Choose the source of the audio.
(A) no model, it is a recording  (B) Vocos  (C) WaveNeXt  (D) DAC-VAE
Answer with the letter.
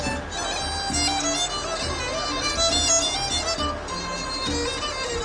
A